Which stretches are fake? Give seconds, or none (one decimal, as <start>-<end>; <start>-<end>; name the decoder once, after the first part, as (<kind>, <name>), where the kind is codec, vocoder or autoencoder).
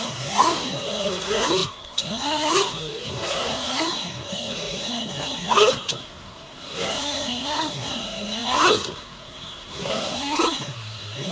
0.0-11.3 (codec, SNAC)